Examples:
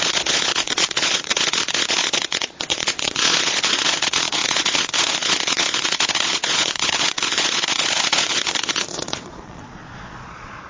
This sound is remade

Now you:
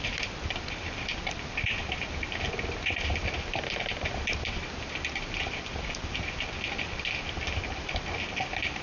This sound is recorded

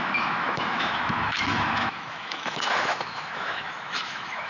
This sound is remade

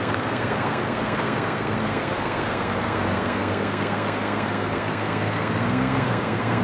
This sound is remade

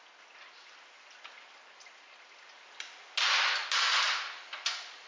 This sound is recorded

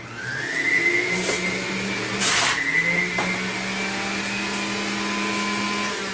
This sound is recorded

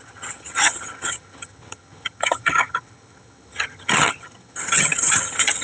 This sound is remade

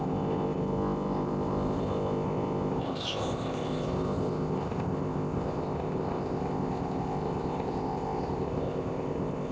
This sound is remade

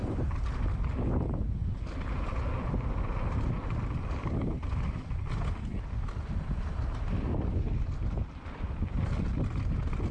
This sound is recorded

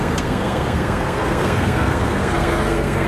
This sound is remade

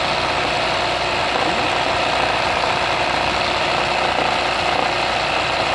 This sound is recorded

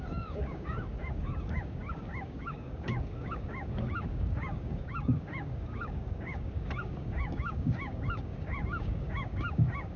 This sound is remade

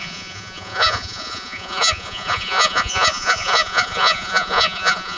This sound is remade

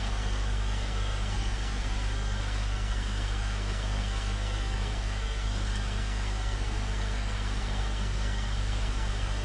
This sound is remade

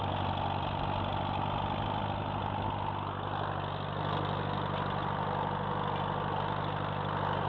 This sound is recorded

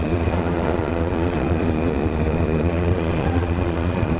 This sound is remade